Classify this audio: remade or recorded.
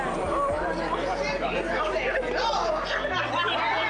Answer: recorded